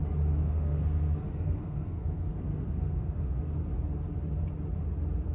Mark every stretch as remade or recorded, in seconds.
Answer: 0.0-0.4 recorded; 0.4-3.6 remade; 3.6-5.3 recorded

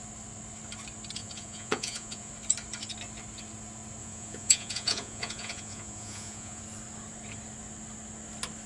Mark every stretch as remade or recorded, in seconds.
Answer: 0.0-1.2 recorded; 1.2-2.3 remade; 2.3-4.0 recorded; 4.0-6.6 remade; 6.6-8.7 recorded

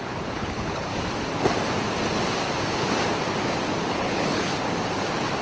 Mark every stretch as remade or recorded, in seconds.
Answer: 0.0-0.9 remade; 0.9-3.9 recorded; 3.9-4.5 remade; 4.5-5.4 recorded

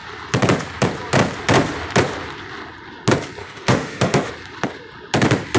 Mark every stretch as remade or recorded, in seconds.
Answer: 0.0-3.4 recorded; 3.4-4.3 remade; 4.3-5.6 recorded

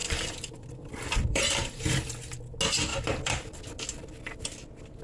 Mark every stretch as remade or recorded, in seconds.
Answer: 0.0-1.8 remade; 1.8-2.9 recorded; 2.9-3.6 remade; 3.6-5.0 recorded